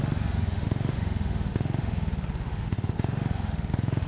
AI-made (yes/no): yes